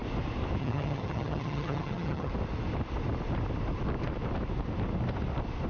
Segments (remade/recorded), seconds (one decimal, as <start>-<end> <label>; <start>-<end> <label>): 0.0-0.6 recorded; 0.6-2.3 remade; 2.3-5.7 recorded